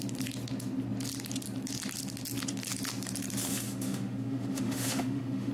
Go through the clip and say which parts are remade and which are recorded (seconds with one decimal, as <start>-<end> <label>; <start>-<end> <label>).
0.0-3.5 recorded; 3.5-5.5 remade